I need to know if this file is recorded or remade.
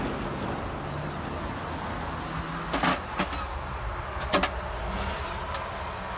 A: recorded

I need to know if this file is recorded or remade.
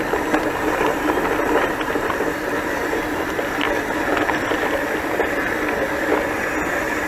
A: recorded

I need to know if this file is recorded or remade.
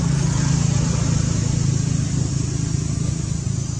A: recorded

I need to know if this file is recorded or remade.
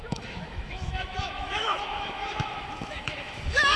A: remade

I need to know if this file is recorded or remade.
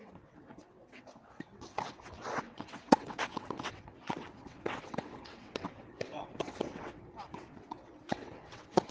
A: remade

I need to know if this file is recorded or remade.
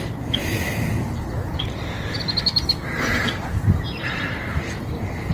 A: recorded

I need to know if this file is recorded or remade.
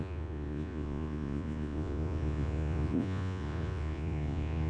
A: remade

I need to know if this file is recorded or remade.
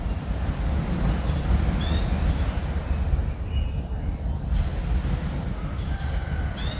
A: recorded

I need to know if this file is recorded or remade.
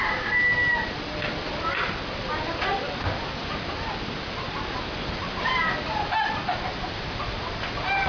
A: recorded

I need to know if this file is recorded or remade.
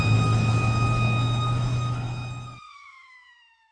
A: remade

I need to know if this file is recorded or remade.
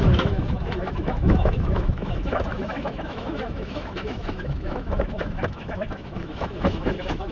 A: remade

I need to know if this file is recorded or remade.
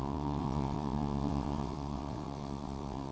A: remade